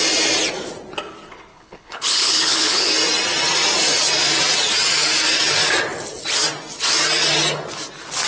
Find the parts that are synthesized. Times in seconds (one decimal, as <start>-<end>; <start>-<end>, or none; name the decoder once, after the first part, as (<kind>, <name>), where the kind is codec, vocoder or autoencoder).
1.5-2.9 (codec, HILCodec)